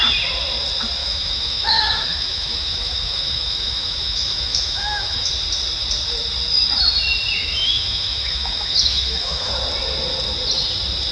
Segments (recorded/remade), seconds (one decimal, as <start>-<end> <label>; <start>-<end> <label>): 0.0-1.0 recorded; 1.0-5.3 remade; 5.3-7.4 recorded; 7.4-9.5 remade; 9.5-11.1 recorded